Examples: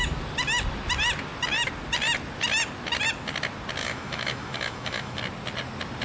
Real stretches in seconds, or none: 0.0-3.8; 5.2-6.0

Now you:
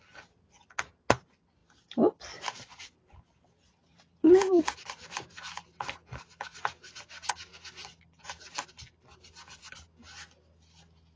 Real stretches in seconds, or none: 0.0-11.2

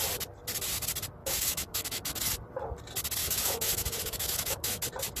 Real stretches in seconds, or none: 0.0-1.2; 2.3-3.2; 4.8-5.2

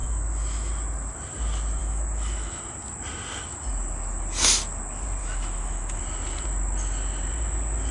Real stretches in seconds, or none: 0.7-1.8; 2.6-5.2; 6.0-7.9